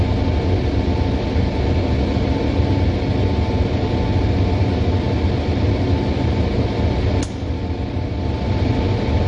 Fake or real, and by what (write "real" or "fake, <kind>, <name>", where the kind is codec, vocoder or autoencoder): real